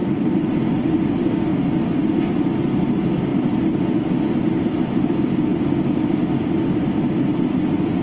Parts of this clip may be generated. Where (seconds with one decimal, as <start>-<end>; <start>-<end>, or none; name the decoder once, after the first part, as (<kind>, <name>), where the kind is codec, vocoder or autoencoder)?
0.0-1.1 (vocoder, BigVGAN v2); 1.5-2.3